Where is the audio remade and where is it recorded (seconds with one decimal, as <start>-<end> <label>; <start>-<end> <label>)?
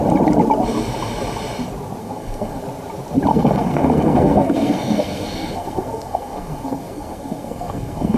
0.0-2.0 recorded; 2.0-2.6 remade; 2.6-3.3 recorded; 3.3-8.2 remade